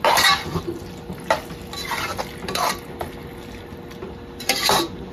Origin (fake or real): real